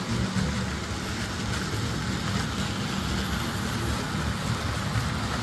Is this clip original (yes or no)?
yes